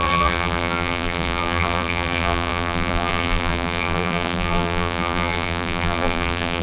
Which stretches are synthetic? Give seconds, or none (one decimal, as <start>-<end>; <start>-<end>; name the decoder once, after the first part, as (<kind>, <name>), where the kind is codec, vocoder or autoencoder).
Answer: 0.0-6.6 (vocoder, BigVGAN v2)